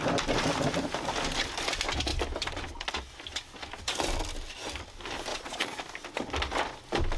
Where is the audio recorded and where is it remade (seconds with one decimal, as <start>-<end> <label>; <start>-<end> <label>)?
0.0-5.3 recorded; 5.3-5.8 remade; 5.8-7.2 recorded